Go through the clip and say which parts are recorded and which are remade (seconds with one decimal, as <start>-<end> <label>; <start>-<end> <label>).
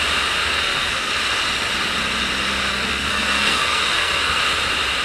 0.0-0.4 recorded; 0.4-1.1 remade; 1.1-2.7 recorded; 2.7-4.4 remade; 4.4-5.0 recorded